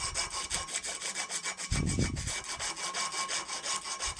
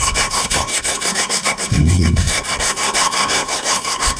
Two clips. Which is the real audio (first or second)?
first